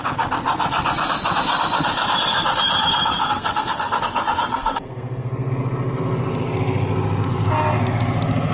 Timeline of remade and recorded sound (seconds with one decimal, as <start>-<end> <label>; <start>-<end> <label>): 0.0-3.1 recorded; 3.1-4.0 remade; 4.0-4.5 recorded; 4.5-5.5 remade; 5.5-8.5 recorded